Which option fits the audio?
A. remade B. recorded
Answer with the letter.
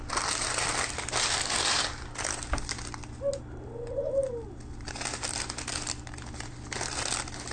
B